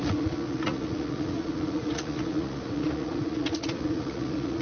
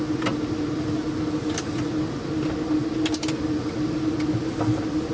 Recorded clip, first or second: second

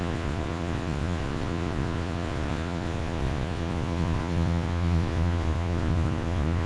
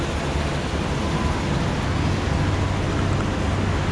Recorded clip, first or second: second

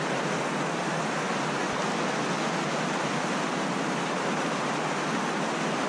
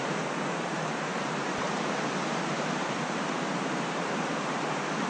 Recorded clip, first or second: first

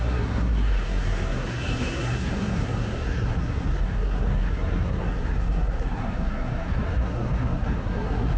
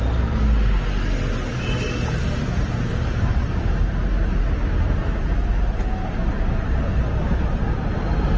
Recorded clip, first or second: second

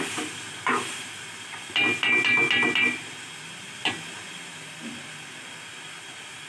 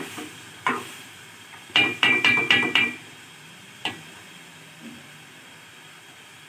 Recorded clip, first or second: first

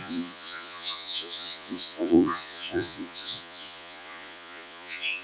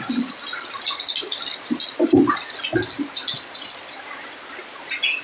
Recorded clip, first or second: second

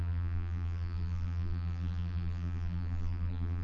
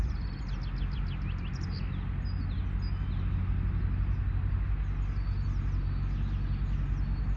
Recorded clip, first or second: second